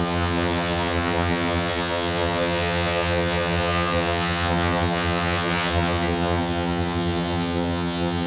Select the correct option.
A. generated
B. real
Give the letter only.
A